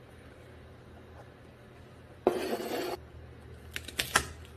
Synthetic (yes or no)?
no